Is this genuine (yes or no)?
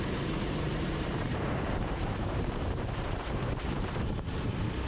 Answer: no